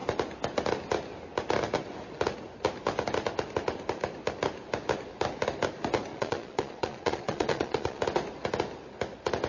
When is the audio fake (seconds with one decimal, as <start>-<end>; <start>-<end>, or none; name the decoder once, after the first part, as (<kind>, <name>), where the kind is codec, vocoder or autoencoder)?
6.1-8.0 (vocoder, Vocos)